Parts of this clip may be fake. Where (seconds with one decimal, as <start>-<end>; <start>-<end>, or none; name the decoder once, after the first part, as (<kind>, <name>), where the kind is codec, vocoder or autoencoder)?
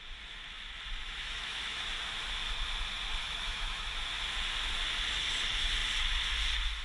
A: 1.0-1.8 (autoencoder, DAC-VAE); 3.2-3.9